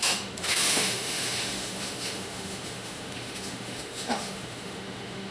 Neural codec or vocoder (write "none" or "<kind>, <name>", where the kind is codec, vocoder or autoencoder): autoencoder, DAC-VAE